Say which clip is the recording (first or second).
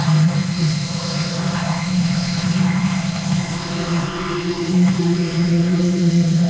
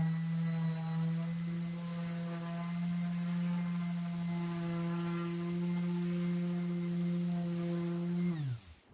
second